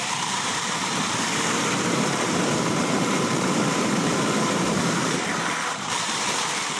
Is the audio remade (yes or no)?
yes